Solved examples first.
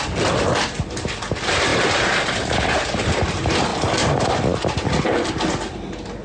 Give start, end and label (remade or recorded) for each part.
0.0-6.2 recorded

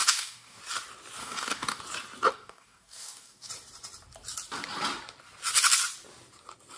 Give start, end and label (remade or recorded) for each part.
0.0-0.6 remade; 0.6-1.2 recorded; 1.2-1.8 remade; 1.8-2.3 recorded; 2.3-3.5 remade; 3.5-6.8 recorded

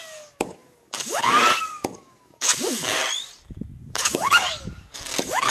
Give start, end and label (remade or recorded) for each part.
0.0-3.0 remade; 3.0-3.9 recorded; 3.9-5.5 remade

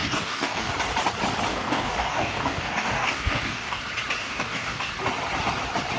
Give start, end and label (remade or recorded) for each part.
0.0-0.7 remade; 0.7-1.5 recorded; 1.5-3.8 remade; 3.8-4.2 recorded; 4.2-4.9 remade; 4.9-6.0 recorded

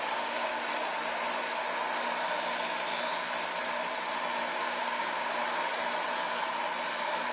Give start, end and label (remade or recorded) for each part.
0.0-0.5 remade; 0.5-4.6 recorded; 4.6-5.4 remade; 5.4-7.3 recorded

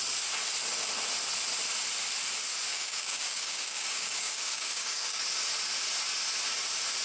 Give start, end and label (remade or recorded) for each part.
0.0-2.7 recorded; 2.7-5.2 remade; 5.2-7.0 recorded

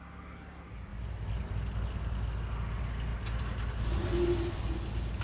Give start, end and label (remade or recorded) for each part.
0.0-5.2 recorded